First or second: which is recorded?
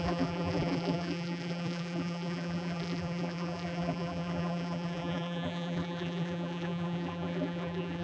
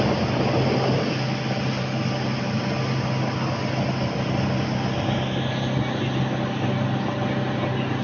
second